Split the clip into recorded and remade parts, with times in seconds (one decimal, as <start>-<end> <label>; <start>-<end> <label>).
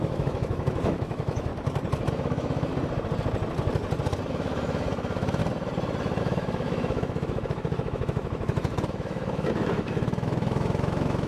0.0-1.5 remade; 1.5-2.1 recorded; 2.1-2.7 remade; 2.7-4.3 recorded; 4.3-5.4 remade; 5.4-6.2 recorded; 6.2-11.3 remade